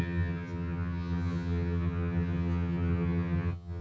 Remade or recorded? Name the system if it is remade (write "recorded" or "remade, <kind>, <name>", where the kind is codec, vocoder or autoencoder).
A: remade, vocoder, HiFi-GAN